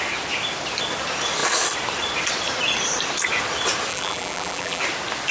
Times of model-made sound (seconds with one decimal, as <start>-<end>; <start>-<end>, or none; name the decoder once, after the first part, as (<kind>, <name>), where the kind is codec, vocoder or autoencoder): 3.9-4.8 (vocoder, BigVGAN v2)